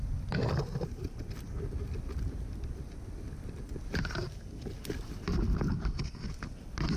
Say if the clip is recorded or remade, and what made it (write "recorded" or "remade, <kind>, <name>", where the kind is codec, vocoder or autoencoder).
recorded